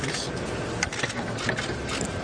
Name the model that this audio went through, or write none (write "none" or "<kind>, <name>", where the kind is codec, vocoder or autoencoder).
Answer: none